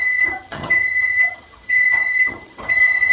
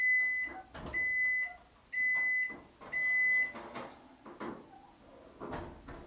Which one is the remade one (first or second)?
first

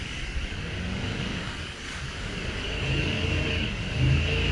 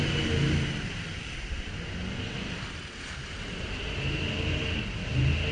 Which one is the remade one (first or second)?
first